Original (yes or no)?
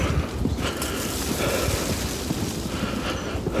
yes